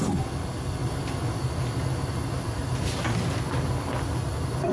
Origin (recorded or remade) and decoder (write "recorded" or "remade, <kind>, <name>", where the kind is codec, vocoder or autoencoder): recorded